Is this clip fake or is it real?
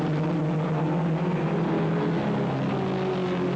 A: real